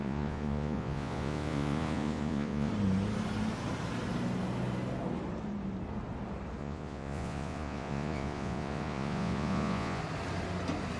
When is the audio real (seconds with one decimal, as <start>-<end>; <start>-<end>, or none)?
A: 2.7-6.6; 10.0-11.0